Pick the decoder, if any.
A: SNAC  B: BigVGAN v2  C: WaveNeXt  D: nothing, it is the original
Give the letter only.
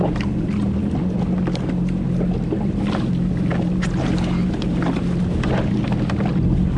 D